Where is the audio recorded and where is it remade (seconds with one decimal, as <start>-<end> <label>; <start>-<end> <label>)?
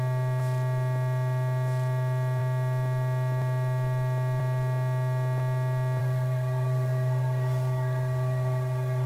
0.0-6.0 recorded; 6.0-9.1 remade